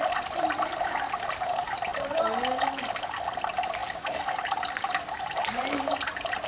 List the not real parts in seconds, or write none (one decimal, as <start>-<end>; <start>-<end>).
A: none